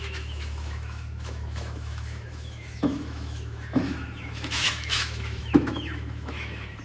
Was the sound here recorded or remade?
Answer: remade